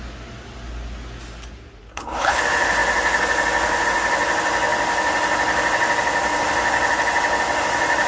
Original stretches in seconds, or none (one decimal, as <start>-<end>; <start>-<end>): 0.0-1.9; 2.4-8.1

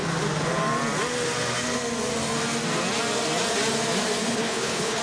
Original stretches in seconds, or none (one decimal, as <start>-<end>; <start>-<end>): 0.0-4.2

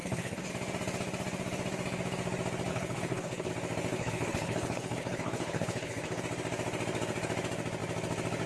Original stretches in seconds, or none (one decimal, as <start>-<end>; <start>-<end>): 0.5-2.7; 3.5-3.9; 6.2-8.5

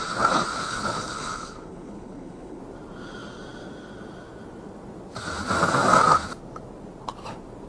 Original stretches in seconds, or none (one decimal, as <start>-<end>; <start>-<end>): 0.0-0.5; 2.6-7.7

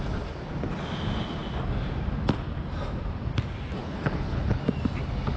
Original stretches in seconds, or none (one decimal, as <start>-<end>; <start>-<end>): 0.0-3.8; 4.6-5.4